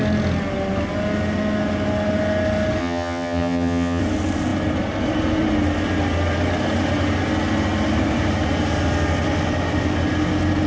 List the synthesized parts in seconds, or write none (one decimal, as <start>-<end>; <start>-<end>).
2.8-4.0